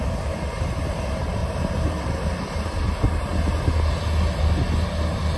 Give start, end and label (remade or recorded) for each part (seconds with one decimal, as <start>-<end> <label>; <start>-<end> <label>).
0.0-5.4 recorded